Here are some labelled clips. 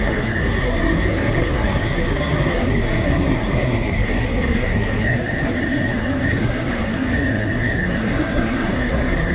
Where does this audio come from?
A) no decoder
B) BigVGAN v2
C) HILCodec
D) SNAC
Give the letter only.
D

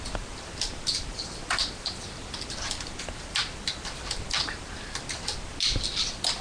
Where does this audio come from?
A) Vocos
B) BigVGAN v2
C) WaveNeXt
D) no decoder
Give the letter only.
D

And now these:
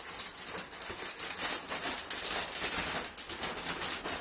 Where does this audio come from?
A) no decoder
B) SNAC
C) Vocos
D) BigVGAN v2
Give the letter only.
A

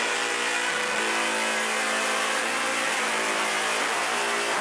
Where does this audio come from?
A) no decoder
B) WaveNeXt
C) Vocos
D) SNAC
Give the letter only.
A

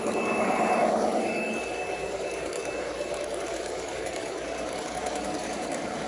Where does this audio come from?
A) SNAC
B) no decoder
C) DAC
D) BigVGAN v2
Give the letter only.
C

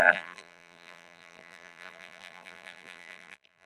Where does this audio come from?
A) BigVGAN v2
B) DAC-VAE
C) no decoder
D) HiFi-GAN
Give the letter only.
A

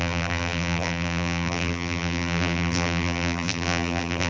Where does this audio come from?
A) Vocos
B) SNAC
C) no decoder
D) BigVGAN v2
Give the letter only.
D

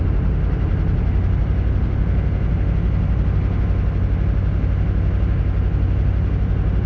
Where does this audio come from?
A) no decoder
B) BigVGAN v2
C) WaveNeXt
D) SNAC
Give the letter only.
A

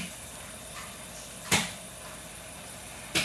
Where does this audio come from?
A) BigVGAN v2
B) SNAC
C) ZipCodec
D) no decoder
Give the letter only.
D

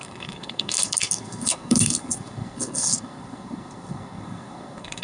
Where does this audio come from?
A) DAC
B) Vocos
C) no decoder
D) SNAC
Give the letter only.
D